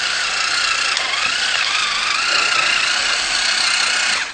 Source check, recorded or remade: recorded